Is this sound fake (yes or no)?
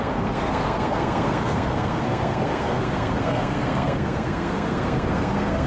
yes